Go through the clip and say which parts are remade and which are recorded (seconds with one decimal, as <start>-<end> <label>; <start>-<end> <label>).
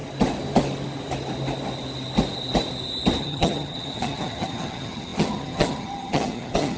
0.0-3.2 recorded; 3.2-6.8 remade